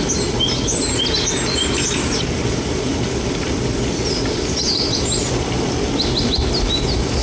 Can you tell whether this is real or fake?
real